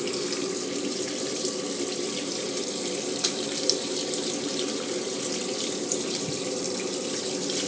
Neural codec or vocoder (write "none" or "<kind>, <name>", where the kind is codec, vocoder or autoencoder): none